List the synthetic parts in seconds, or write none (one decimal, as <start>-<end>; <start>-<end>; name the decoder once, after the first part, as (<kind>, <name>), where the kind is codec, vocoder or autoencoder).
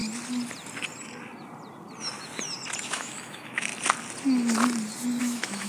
2.8-3.7 (autoencoder, DAC-VAE); 5.2-5.7